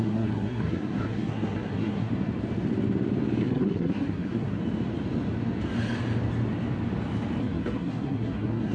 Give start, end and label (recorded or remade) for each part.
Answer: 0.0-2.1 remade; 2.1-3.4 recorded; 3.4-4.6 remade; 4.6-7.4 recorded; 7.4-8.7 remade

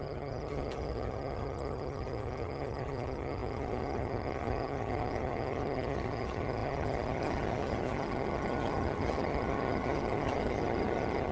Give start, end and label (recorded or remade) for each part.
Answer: 0.0-11.3 remade

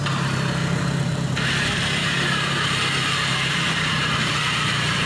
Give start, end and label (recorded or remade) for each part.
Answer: 0.0-0.6 recorded; 0.6-1.3 remade; 1.3-2.0 recorded; 2.0-5.1 remade

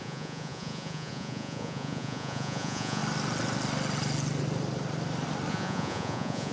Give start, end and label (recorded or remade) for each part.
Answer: 0.0-3.0 remade; 3.0-5.5 recorded; 5.5-6.5 remade

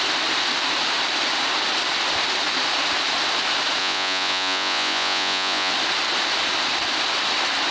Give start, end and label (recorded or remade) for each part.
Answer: 0.0-3.8 recorded; 3.8-5.7 remade; 5.7-7.7 recorded

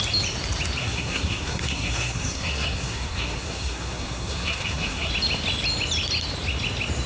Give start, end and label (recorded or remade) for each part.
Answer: 0.0-0.8 recorded; 0.8-5.1 remade; 5.1-7.1 recorded

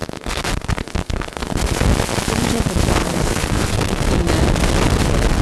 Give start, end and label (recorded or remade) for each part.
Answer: 0.0-1.8 remade; 1.8-3.0 recorded; 3.0-4.1 remade; 4.1-5.4 recorded

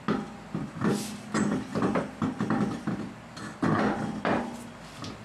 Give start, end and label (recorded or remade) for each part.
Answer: 0.0-5.2 recorded